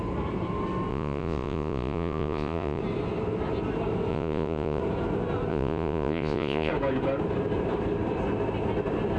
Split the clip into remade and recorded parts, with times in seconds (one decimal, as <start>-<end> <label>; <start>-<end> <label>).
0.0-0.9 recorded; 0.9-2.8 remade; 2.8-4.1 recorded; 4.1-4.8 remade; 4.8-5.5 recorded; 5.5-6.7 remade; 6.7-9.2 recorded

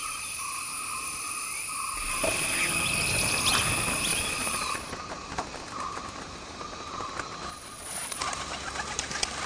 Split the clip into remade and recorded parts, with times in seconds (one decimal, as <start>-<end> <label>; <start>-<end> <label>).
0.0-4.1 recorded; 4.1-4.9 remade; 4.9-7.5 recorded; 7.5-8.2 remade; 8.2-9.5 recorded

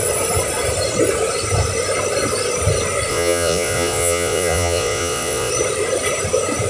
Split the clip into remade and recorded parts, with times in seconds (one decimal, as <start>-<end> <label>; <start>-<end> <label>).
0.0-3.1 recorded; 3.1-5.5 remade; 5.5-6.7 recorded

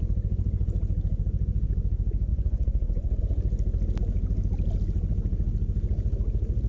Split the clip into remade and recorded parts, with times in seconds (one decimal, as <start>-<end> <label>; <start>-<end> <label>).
0.0-2.3 recorded; 2.3-3.2 remade; 3.2-6.7 recorded

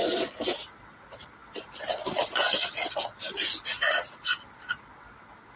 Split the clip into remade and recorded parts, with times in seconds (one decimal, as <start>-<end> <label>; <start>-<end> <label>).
0.0-5.6 recorded

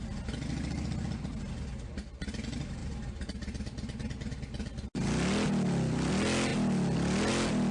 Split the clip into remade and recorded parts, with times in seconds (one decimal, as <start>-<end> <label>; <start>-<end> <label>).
0.0-7.7 recorded